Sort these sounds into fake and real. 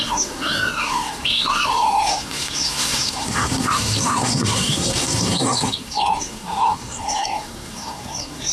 fake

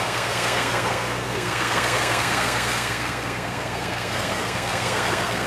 fake